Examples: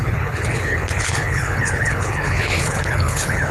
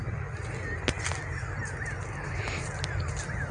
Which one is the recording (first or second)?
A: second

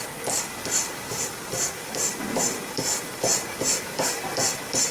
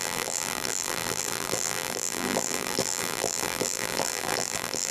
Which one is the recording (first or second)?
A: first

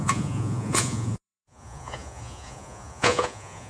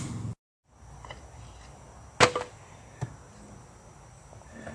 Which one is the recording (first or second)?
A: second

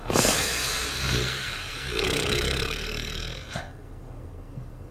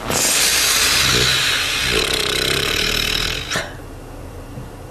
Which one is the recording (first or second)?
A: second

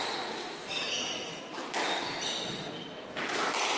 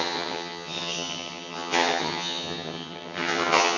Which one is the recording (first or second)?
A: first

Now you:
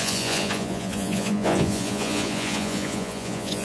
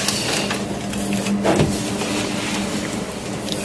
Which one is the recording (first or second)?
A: second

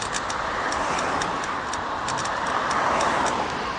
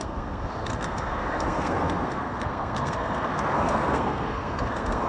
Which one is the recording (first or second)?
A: first